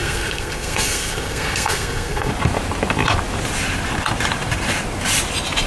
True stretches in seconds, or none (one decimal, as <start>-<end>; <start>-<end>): 2.3-5.7